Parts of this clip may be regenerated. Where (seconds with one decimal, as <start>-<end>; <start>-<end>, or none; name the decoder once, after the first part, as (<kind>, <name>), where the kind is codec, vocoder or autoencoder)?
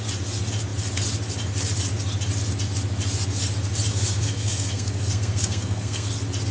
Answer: 3.9-6.1 (codec, SNAC)